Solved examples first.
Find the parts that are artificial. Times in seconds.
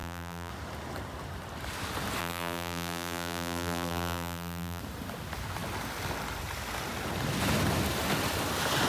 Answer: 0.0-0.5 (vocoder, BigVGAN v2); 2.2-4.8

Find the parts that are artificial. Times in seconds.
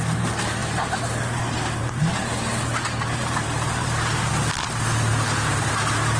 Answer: 3.2-4.3 (vocoder, BigVGAN v2); 5.1-5.7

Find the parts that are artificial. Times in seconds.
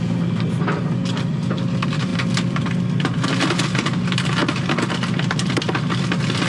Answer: none